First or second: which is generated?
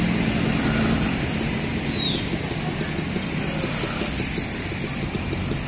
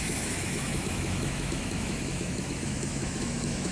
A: second